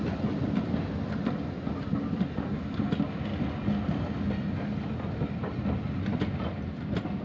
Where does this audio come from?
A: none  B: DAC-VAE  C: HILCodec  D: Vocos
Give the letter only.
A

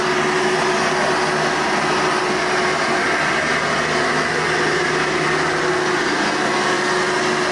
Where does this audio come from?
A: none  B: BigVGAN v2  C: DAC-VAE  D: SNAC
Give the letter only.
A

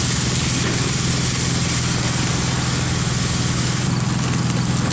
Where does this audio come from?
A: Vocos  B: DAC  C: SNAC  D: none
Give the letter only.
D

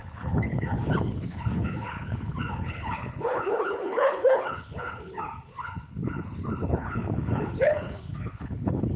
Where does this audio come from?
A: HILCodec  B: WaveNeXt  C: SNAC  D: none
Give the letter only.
A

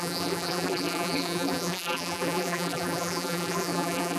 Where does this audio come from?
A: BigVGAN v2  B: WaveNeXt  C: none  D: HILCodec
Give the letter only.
A